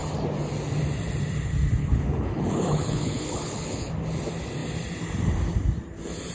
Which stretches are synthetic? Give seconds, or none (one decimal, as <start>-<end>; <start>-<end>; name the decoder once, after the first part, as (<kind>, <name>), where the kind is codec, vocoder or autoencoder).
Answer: 1.8-3.9 (codec, HILCodec)